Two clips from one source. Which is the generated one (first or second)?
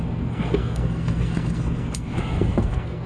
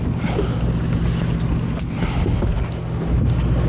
first